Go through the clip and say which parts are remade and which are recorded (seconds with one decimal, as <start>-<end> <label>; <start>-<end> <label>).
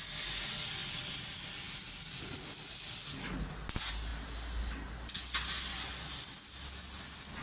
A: 0.0-7.4 recorded